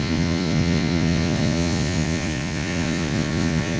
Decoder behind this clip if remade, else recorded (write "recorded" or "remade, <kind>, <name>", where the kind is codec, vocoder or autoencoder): remade, vocoder, Vocos